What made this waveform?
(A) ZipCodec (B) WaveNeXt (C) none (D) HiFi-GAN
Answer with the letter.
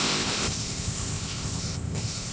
A